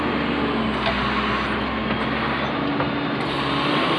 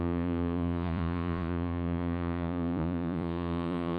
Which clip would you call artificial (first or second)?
second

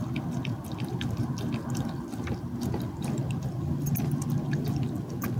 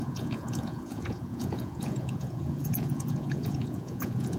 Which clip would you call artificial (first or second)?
second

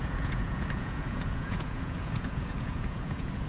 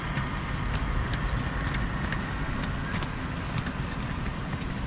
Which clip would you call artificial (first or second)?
first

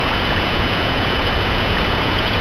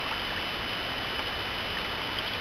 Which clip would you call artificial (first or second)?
first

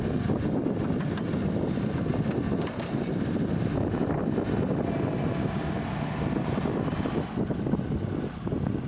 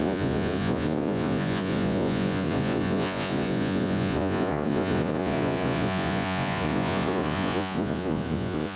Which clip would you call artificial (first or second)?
second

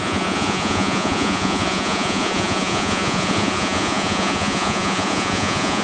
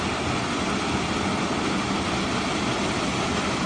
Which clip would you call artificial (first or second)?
first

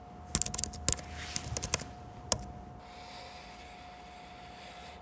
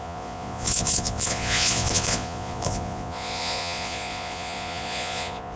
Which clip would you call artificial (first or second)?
second